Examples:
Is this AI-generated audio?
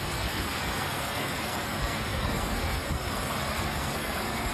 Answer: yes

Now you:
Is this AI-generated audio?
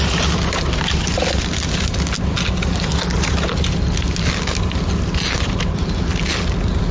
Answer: no